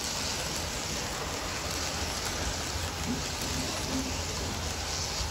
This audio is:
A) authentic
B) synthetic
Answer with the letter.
A